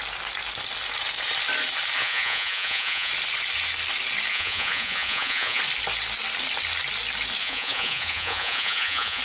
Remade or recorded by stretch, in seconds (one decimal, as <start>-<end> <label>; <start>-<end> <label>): 0.0-2.0 recorded; 2.0-3.1 remade; 3.1-4.3 recorded; 4.3-5.6 remade; 5.6-7.4 recorded; 7.4-9.2 remade